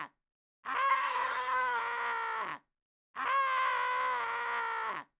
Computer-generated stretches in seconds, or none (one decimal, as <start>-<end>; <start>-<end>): 0.9-1.8